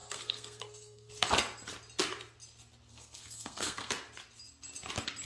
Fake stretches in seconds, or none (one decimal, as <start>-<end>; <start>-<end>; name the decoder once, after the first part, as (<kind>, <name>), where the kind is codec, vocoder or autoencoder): 0.0-1.1 (codec, SNAC); 2.9-3.9